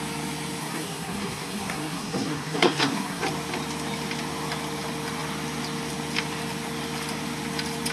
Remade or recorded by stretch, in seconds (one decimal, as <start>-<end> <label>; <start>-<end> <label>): 0.0-0.6 recorded; 0.6-3.2 remade; 3.2-7.9 recorded